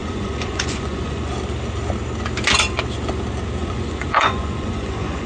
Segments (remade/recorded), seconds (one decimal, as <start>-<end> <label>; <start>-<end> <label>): 0.0-1.3 remade; 1.3-3.6 recorded; 3.6-5.3 remade